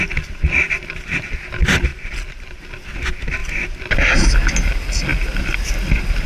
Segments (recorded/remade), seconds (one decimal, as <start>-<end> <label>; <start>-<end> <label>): 0.0-1.9 recorded; 1.9-2.6 remade; 2.6-3.4 recorded; 3.4-4.1 remade; 4.1-5.1 recorded; 5.1-5.7 remade; 5.7-6.3 recorded